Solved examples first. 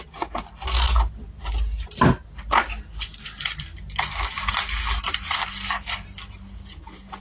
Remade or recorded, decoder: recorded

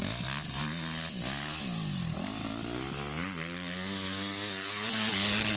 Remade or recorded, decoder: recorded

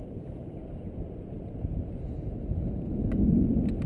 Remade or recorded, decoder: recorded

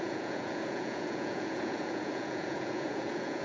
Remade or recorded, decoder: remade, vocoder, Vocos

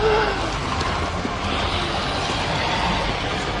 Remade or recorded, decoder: recorded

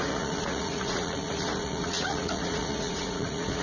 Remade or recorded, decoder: remade, vocoder, Vocos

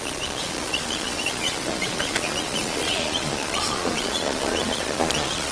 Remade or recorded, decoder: remade, vocoder, Vocos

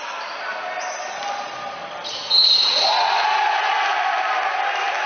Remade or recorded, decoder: recorded